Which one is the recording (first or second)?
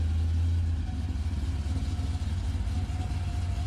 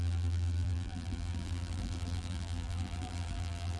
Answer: first